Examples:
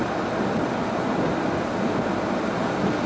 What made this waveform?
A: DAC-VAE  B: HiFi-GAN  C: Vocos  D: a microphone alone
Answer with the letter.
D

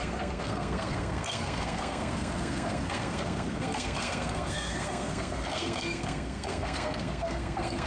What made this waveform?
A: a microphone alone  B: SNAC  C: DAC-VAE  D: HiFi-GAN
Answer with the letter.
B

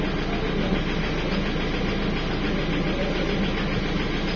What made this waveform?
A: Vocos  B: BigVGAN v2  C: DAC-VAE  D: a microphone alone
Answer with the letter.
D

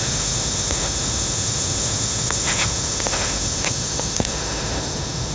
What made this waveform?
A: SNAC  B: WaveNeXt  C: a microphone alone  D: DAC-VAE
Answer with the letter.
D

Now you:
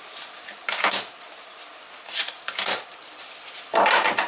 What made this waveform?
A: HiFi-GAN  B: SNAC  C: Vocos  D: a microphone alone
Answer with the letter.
D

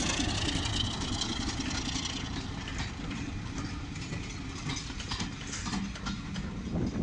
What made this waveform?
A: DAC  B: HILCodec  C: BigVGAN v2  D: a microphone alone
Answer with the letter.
D